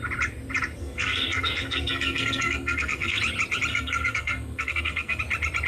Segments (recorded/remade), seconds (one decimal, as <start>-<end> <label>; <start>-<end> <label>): 0.0-0.8 recorded; 0.8-3.2 remade; 3.2-3.7 recorded; 3.7-5.2 remade; 5.2-5.7 recorded